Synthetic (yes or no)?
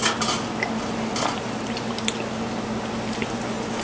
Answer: no